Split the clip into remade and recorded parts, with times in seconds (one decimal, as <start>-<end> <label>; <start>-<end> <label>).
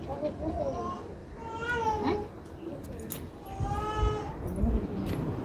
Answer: 0.0-5.4 recorded